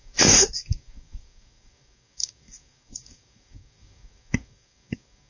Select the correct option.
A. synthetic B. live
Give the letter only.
A